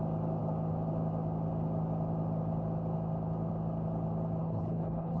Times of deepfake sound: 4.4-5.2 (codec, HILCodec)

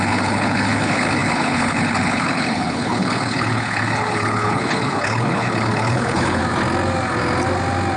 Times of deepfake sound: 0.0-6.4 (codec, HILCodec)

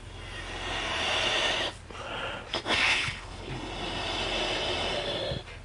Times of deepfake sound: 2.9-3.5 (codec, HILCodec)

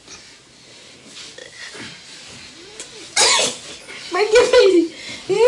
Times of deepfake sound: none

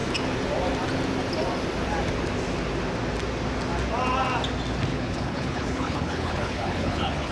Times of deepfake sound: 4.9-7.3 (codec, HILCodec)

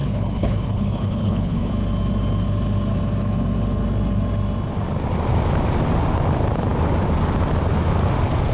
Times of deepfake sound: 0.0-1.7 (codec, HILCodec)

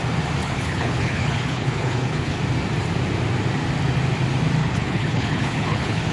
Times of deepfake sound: 0.4-2.4 (codec, HILCodec); 4.6-6.1

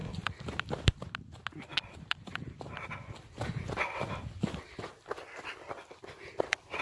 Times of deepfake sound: none